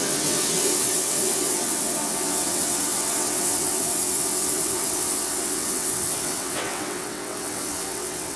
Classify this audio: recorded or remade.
remade